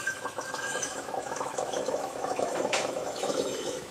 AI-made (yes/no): yes